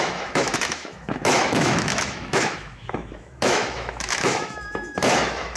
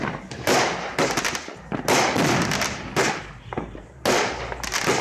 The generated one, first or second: first